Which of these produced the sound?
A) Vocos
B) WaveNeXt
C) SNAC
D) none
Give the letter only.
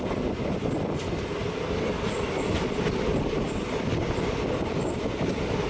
D